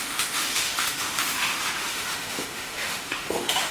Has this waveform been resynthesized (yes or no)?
yes